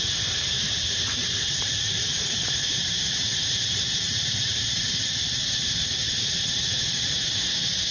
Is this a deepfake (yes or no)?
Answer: yes